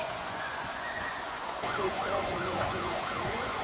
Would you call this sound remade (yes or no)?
yes